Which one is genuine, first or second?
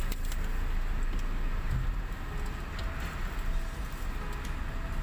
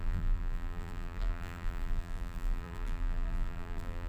first